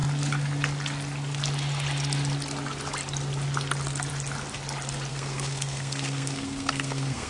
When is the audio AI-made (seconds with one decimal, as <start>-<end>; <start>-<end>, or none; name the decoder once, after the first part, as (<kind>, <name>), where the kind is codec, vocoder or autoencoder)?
5.1-7.3 (codec, SNAC)